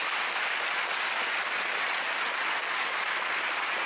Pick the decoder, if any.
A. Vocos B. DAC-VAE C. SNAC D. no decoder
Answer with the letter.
D